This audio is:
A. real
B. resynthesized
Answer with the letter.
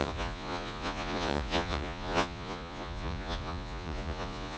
B